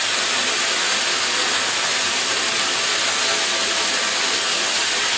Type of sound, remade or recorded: recorded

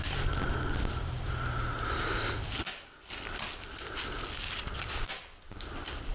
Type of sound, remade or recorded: recorded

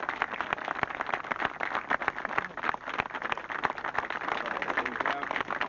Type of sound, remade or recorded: recorded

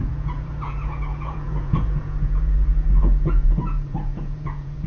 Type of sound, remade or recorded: remade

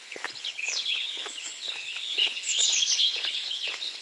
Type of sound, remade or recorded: remade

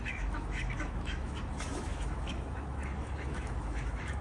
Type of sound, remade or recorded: remade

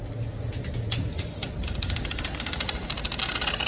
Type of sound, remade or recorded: recorded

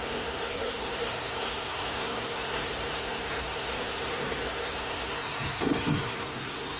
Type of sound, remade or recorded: remade